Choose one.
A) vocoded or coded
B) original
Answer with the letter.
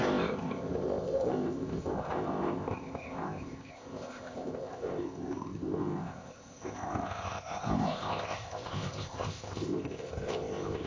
A